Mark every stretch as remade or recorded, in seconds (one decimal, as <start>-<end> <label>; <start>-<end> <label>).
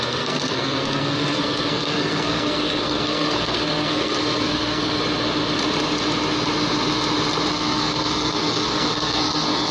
0.0-5.0 remade; 5.0-7.5 recorded; 7.5-9.7 remade